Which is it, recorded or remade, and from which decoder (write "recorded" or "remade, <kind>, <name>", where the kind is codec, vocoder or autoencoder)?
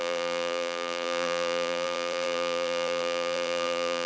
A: remade, vocoder, BigVGAN v2